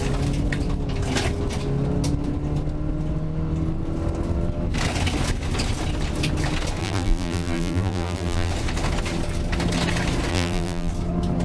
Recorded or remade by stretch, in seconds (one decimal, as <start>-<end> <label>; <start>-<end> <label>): 0.0-6.8 recorded; 6.8-8.5 remade; 8.5-10.3 recorded; 10.3-10.9 remade; 10.9-11.4 recorded